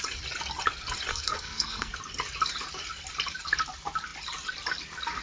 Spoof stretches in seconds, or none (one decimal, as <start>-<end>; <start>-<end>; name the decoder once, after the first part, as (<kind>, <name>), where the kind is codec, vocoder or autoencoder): 1.1-1.9 (codec, SNAC)